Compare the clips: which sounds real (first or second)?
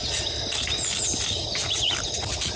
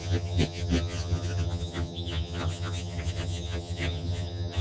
first